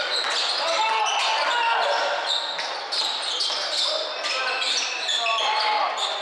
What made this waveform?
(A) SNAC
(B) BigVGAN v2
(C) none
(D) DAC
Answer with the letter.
C